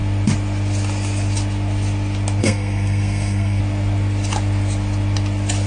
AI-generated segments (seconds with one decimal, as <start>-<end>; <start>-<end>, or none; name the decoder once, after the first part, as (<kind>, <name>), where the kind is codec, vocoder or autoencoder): 2.4-3.6 (codec, SNAC)